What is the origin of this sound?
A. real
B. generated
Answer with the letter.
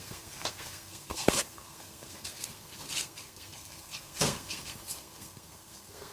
B